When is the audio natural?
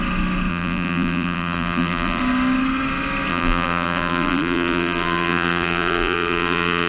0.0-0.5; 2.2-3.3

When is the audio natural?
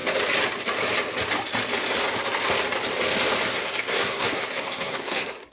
0.0-3.5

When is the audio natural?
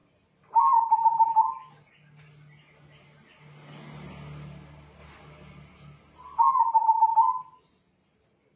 0.0-8.6